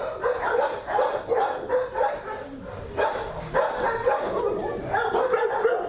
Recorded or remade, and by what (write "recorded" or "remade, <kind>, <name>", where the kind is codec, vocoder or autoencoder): remade, vocoder, BigVGAN v2